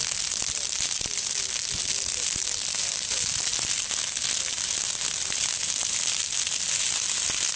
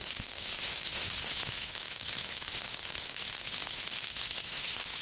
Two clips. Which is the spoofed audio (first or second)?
second